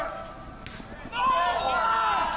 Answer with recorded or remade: recorded